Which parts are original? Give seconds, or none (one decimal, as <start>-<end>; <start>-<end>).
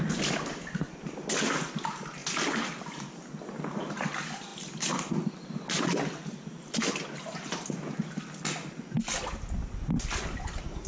0.0-10.9